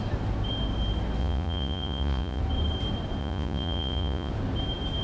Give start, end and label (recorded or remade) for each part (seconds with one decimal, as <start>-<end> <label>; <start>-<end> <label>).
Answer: 0.0-1.2 recorded; 1.2-2.4 remade; 2.4-3.2 recorded; 3.2-4.3 remade; 4.3-5.0 recorded